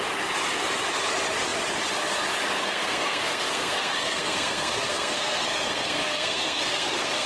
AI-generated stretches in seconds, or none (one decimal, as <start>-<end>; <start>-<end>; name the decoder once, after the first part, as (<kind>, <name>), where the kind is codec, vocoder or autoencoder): 2.6-7.3 (codec, SNAC)